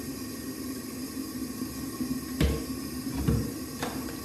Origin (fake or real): real